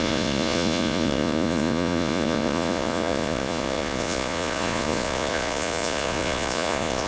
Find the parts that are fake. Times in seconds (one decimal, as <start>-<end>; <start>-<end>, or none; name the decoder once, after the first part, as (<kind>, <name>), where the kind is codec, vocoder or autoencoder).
0.0-7.1 (vocoder, Vocos)